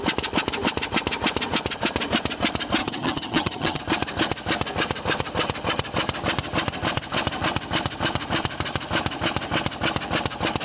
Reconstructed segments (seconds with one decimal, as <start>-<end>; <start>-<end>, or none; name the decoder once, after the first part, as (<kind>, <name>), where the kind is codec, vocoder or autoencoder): 2.8-3.8 (vocoder, HiFi-GAN)